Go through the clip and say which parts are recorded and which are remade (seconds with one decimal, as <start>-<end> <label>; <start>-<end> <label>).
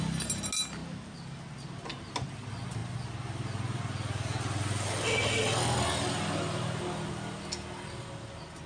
0.0-8.7 recorded